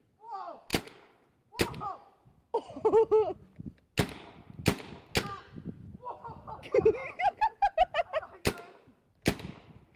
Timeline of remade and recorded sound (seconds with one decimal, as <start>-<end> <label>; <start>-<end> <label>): 0.0-10.0 recorded